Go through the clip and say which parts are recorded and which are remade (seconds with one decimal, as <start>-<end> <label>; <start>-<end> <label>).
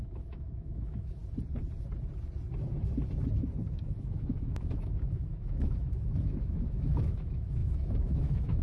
0.0-1.2 remade; 1.2-3.7 recorded; 3.7-8.6 remade